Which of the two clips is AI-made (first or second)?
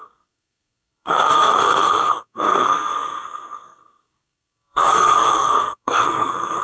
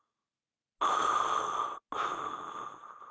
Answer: first